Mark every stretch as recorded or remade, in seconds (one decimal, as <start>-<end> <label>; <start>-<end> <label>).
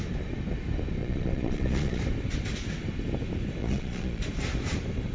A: 0.0-1.0 recorded; 1.0-2.0 remade; 2.0-3.6 recorded; 3.6-4.2 remade; 4.2-5.1 recorded